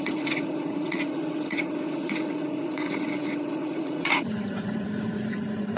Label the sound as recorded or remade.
remade